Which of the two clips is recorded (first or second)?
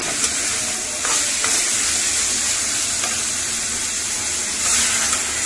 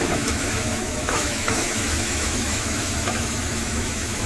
first